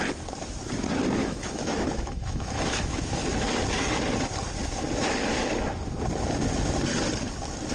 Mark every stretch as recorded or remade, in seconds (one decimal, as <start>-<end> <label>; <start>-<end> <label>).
0.0-1.2 recorded; 1.2-3.0 remade; 3.0-7.7 recorded

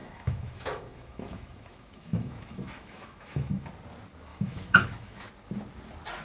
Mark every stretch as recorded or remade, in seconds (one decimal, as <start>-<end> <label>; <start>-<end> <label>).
0.0-3.7 remade; 3.7-4.3 recorded; 4.3-5.3 remade; 5.3-6.2 recorded

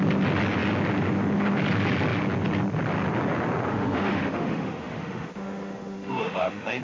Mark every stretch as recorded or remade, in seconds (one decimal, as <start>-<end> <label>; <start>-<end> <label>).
0.0-3.7 recorded; 3.7-6.8 remade

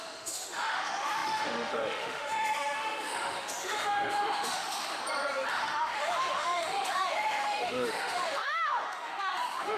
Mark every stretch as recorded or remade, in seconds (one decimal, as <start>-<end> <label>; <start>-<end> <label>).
0.0-5.0 remade; 5.0-5.5 recorded; 5.5-9.8 remade